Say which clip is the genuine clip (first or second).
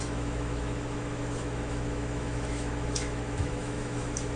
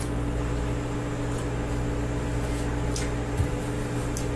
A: second